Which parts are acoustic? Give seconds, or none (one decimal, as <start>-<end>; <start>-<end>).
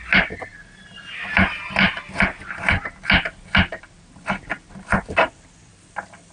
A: 0.0-6.3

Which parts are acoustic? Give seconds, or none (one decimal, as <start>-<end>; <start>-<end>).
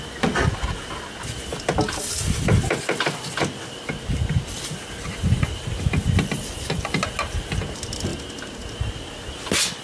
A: 0.0-9.8